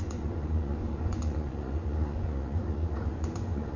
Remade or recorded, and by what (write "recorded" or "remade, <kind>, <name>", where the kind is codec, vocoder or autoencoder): remade, vocoder, Vocos